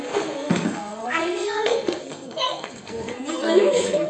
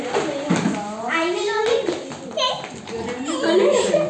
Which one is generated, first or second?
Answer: first